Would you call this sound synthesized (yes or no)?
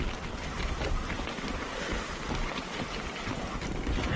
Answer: no